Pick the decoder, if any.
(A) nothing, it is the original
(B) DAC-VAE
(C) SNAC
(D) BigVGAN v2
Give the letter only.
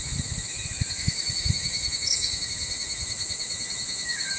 B